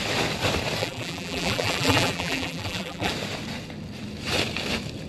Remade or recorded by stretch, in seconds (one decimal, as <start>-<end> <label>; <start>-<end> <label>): 0.0-0.8 recorded; 0.8-3.1 remade; 3.1-5.1 recorded